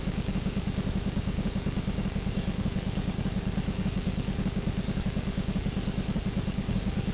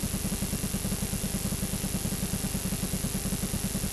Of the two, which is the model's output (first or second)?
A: first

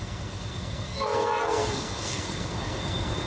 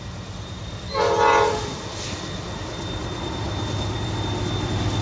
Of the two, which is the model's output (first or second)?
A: first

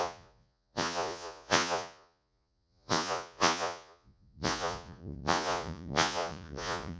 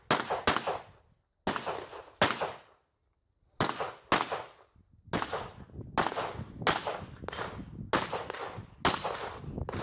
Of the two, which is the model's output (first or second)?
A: first